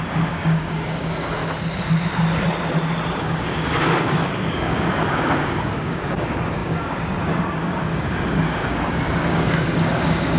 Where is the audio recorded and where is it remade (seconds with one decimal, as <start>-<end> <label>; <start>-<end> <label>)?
0.0-1.4 remade; 1.4-3.2 recorded; 3.2-10.4 remade